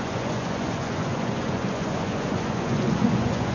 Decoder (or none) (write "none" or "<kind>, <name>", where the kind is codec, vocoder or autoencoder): vocoder, Vocos